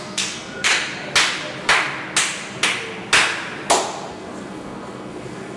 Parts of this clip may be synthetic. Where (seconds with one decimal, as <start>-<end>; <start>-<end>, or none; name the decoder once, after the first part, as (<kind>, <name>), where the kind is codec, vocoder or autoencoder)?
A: 0.0-0.7 (codec, SNAC); 4.1-5.6